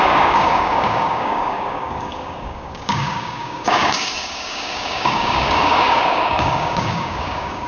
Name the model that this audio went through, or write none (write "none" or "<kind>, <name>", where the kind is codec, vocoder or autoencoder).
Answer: codec, DAC